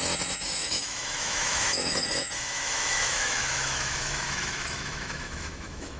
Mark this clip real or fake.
fake